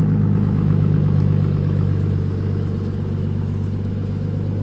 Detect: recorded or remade remade